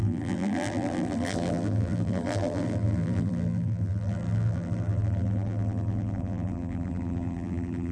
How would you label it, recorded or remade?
remade